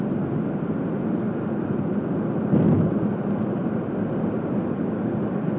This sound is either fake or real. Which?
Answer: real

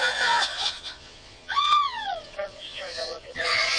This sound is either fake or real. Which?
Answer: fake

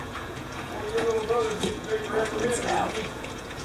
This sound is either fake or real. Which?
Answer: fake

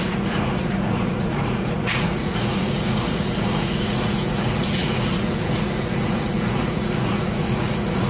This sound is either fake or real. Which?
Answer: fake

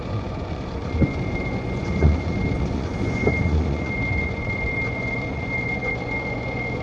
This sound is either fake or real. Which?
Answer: fake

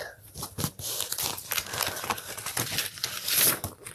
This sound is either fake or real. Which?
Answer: real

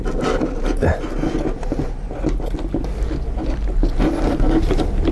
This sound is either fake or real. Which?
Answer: real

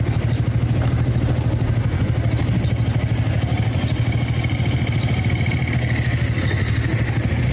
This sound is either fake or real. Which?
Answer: real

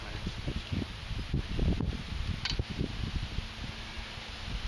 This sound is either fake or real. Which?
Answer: real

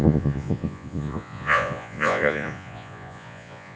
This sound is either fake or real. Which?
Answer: fake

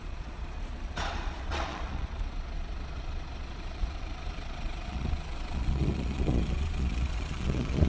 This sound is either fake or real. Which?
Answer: fake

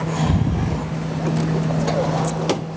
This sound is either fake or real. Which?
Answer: real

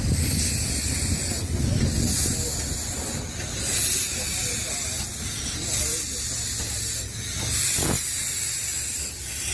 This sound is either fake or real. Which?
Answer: real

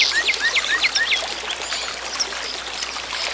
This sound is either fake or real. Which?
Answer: real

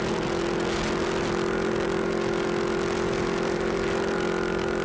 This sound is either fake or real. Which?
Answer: real